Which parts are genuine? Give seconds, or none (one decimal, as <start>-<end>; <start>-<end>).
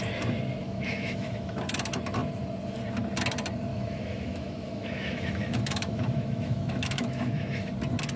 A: 0.0-0.6; 1.6-3.7; 7.7-8.2